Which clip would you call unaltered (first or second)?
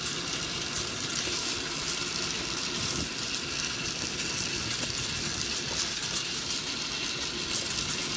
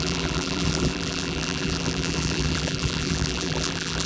first